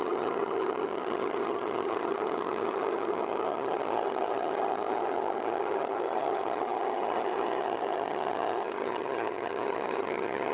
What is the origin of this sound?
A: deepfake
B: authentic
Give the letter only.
A